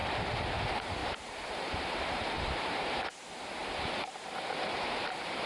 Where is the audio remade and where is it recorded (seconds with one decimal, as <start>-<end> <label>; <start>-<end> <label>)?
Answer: 0.0-1.0 recorded; 1.0-3.1 remade; 3.1-3.6 recorded; 3.6-5.5 remade